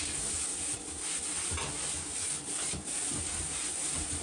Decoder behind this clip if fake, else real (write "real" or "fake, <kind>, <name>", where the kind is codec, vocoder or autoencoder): real